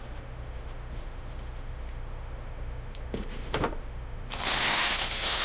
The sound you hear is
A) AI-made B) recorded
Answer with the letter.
A